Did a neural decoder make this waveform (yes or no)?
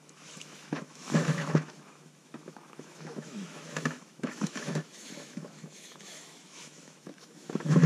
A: yes